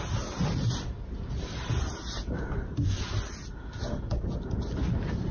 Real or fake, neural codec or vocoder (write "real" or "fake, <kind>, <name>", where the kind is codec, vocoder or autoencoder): real